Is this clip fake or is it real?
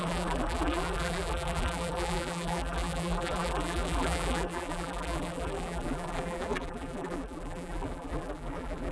fake